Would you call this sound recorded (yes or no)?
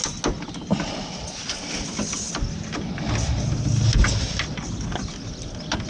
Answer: yes